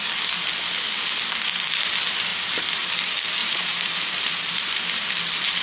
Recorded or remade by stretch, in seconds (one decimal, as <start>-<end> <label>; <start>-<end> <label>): 0.0-2.3 recorded; 2.3-2.9 remade; 2.9-3.4 recorded; 3.4-5.6 remade